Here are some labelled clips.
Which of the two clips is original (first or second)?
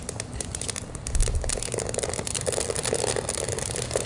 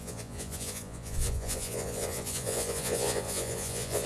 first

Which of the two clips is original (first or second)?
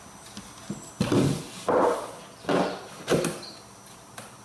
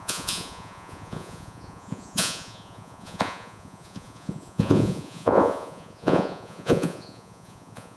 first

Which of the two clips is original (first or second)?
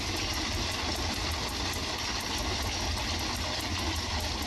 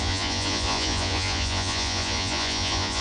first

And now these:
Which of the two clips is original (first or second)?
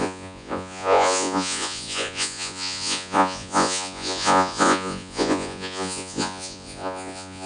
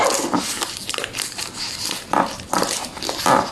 second